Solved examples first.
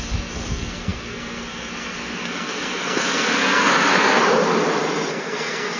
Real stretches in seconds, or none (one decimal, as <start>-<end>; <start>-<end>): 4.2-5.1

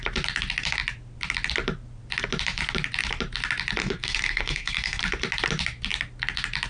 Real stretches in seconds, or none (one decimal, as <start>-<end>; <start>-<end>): 0.0-3.8; 5.0-6.7

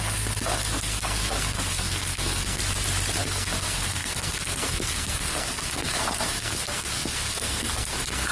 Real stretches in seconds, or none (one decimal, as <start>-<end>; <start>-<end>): 2.6-3.2

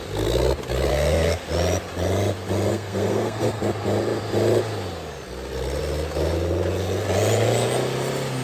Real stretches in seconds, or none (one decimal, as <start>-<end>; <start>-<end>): 0.0-0.9; 1.4-2.7; 3.6-8.4

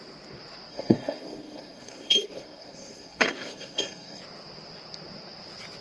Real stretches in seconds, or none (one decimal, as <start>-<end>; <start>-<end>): 0.0-0.7; 4.2-5.8